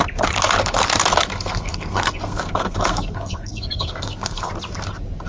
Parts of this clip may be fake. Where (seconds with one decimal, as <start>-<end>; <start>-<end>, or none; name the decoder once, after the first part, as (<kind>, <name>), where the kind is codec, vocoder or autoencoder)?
1.3-4.5 (codec, SNAC)